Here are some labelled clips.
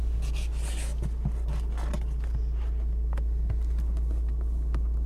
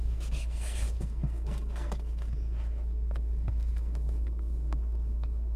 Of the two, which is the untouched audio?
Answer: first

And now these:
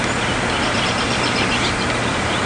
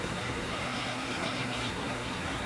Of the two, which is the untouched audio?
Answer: first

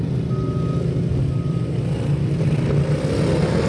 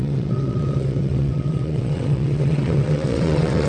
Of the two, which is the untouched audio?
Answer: first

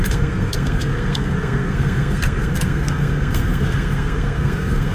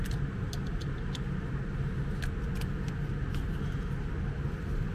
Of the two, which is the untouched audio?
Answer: second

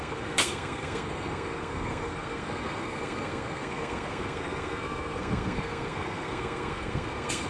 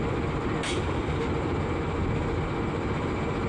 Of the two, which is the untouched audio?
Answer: second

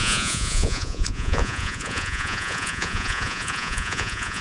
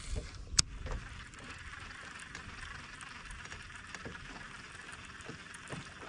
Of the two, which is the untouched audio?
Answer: second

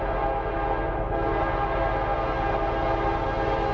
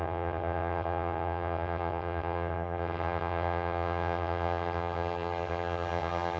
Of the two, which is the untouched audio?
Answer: first